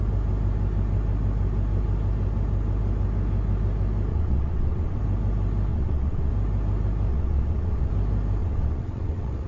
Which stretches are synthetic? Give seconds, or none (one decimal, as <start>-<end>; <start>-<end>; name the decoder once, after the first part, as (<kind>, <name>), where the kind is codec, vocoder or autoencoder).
4.1-5.0 (vocoder, WaveNeXt); 5.7-6.3; 7.1-7.9; 8.4-9.5